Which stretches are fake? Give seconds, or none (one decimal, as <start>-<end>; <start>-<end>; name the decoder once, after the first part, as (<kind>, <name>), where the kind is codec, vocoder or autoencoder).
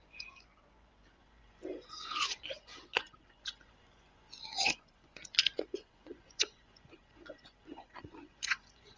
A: 0.0-9.0 (vocoder, Vocos)